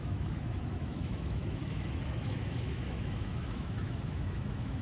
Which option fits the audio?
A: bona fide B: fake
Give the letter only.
B